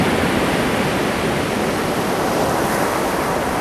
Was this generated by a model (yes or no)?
no